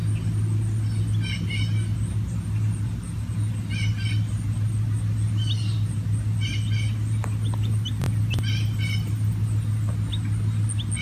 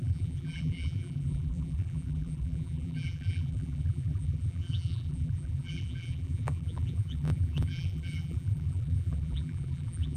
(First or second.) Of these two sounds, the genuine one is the first